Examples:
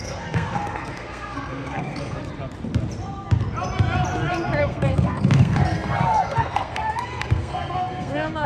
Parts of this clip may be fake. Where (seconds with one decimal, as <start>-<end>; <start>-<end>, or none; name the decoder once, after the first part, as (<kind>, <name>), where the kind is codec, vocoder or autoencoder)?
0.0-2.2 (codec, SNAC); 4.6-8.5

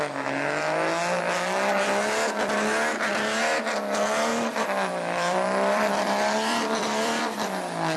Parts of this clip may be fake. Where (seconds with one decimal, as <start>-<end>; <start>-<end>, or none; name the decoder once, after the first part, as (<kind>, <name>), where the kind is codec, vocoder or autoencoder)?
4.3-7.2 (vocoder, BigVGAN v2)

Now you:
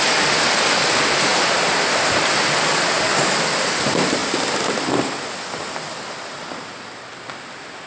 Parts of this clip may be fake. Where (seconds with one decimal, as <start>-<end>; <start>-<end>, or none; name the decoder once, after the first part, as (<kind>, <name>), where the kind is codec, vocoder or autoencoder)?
none

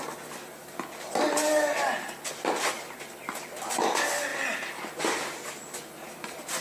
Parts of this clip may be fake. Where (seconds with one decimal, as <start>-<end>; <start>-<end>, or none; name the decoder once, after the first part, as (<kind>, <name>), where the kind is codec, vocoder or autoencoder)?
none

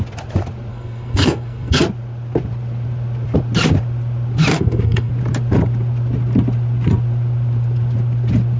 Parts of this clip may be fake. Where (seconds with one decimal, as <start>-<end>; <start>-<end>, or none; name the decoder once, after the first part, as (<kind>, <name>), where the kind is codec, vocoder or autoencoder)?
0.7-1.8 (codec, SNAC); 4.5-5.1

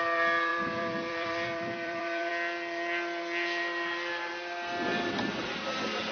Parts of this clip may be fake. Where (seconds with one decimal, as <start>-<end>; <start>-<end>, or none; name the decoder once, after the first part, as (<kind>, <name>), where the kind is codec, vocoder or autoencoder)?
0.5-2.3 (vocoder, BigVGAN v2)

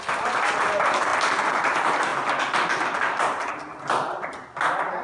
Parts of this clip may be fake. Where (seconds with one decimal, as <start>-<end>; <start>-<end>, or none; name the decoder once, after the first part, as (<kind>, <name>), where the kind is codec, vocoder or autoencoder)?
none

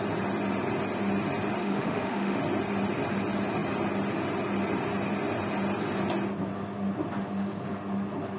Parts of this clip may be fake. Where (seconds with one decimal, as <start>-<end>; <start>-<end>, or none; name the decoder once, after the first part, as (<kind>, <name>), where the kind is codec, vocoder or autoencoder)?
1.6-2.4 (autoencoder, DAC-VAE)